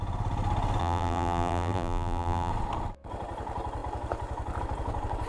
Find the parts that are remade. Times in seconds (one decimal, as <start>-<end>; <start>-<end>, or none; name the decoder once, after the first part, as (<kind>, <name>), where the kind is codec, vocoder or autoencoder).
0.8-2.5 (vocoder, BigVGAN v2)